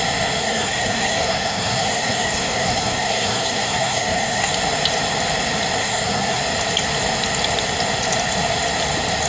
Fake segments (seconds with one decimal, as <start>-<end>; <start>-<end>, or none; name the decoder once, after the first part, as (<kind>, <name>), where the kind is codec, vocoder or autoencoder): 0.4-4.5 (codec, SNAC); 5.8-6.4